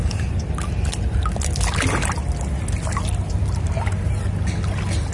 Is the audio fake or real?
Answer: real